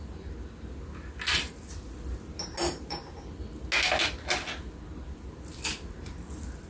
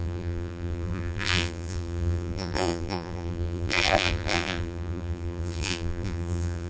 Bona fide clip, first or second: first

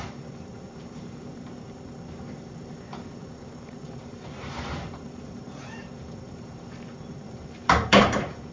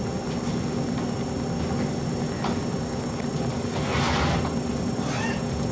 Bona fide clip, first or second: second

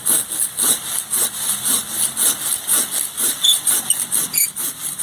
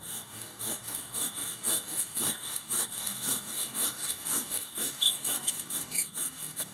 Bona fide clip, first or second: first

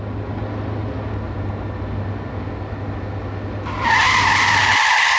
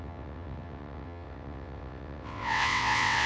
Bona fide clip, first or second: first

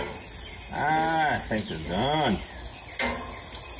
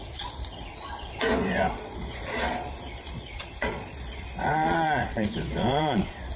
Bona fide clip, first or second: first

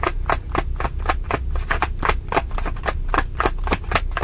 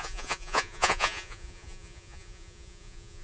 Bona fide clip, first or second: first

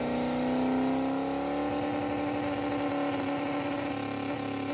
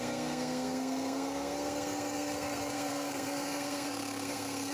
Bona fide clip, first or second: first